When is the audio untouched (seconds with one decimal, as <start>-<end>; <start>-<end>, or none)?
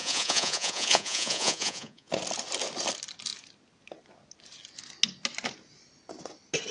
2.1-6.7